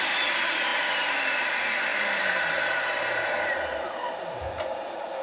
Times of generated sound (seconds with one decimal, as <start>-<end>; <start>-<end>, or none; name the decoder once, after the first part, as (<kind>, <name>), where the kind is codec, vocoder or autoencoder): 0.0-0.7 (vocoder, BigVGAN v2); 1.4-5.2